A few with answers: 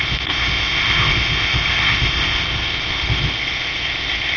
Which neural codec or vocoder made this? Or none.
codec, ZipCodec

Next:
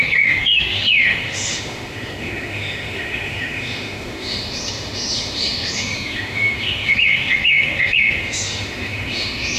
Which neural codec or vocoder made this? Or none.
autoencoder, DAC-VAE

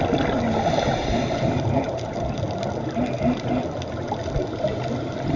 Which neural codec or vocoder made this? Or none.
none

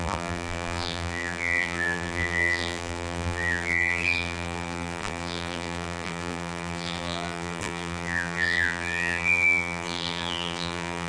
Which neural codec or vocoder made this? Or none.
vocoder, BigVGAN v2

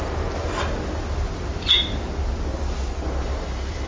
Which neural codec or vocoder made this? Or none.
none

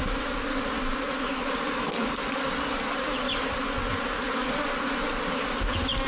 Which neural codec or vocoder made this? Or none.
vocoder, BigVGAN v2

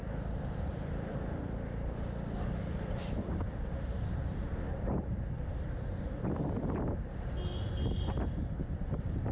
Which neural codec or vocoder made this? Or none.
none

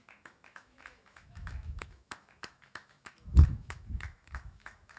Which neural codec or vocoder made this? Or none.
autoencoder, DAC-VAE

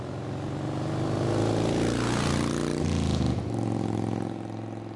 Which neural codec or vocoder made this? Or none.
none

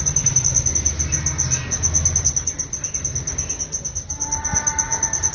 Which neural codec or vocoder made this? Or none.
none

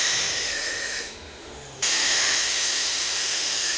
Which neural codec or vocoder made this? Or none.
autoencoder, DAC-VAE